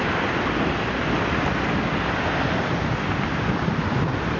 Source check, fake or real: real